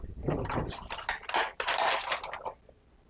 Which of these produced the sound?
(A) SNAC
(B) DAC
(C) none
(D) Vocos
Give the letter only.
C